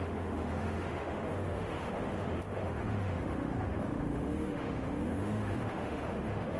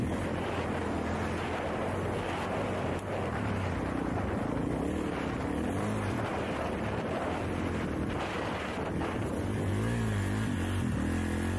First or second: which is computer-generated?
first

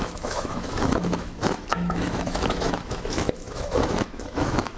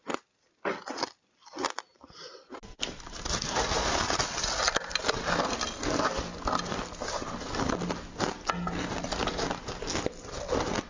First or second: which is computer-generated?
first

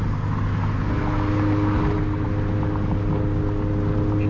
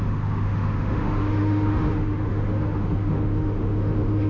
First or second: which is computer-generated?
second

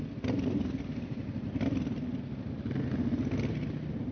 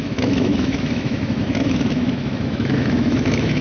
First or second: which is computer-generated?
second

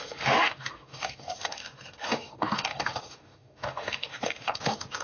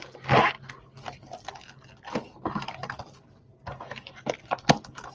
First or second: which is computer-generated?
first